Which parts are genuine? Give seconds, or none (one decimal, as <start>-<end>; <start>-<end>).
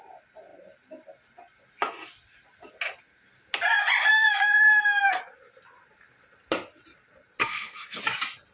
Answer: 0.0-4.1; 5.2-7.4; 8.0-8.5